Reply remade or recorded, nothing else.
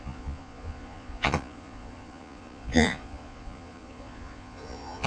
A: remade